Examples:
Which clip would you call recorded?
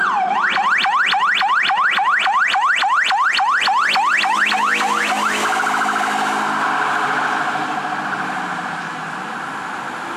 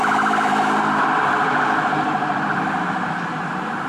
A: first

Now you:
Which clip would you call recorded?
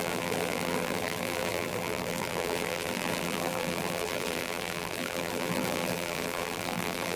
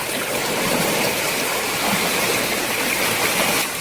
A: second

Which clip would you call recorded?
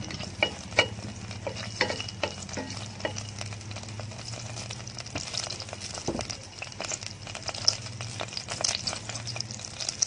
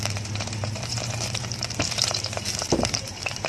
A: first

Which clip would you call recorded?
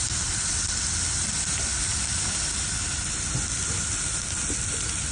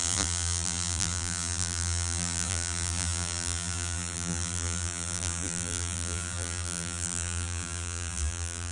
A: first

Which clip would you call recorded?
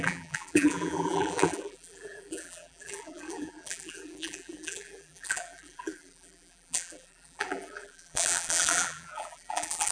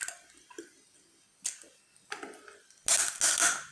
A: second